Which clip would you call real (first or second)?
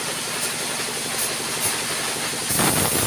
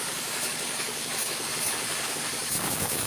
first